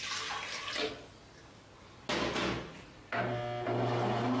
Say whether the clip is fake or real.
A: real